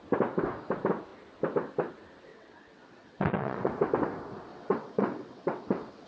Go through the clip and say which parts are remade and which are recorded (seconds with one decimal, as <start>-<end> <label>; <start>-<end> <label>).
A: 0.0-2.3 recorded; 2.3-3.7 remade; 3.7-4.5 recorded; 4.5-6.1 remade